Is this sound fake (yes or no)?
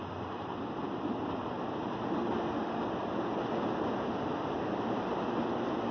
no